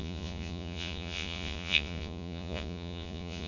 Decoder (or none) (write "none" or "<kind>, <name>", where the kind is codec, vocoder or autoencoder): vocoder, Vocos